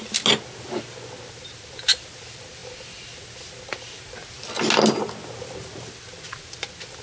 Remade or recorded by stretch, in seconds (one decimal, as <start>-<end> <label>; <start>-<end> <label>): 0.0-7.0 recorded